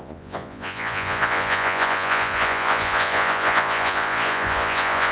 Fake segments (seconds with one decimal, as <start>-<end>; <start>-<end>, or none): 0.0-5.1